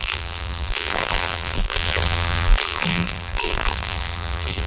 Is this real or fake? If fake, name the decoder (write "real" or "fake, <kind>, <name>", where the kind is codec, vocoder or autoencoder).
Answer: fake, vocoder, BigVGAN v2